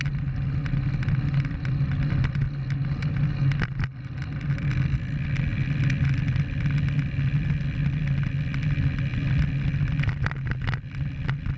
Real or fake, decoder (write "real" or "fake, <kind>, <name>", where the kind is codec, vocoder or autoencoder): real